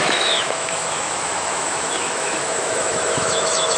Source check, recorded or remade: remade